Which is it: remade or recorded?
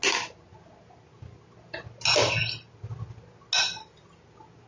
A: recorded